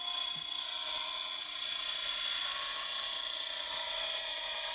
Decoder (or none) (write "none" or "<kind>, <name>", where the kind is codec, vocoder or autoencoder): none